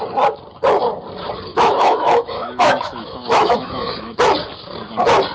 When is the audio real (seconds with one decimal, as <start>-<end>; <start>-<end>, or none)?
0.0-1.5; 4.2-5.3